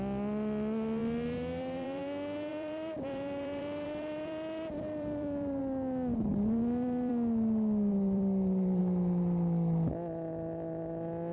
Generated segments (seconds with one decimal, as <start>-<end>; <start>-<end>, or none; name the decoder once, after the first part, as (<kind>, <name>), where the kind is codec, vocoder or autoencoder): 1.0-2.0 (vocoder, BigVGAN v2); 2.5-5.6; 6.3-7.1; 7.9-8.8